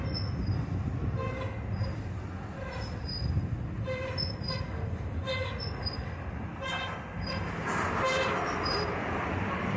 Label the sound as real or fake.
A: real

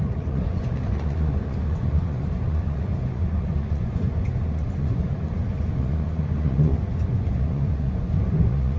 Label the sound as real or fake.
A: fake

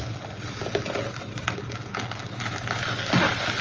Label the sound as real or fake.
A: real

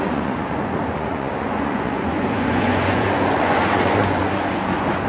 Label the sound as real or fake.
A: fake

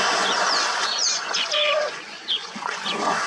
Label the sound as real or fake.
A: fake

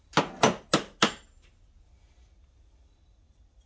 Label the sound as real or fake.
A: real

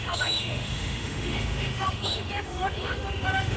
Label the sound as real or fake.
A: fake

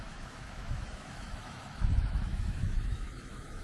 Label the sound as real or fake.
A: fake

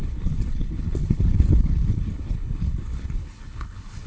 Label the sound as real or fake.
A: fake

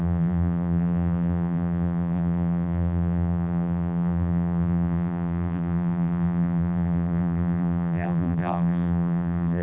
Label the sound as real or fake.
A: fake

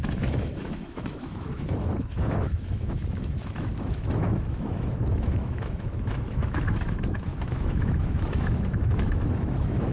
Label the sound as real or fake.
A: fake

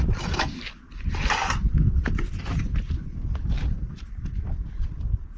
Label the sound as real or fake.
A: real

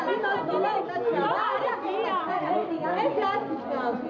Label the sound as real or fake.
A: real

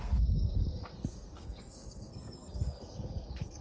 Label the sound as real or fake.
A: fake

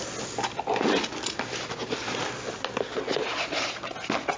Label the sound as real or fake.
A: real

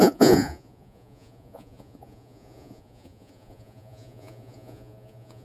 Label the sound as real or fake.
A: fake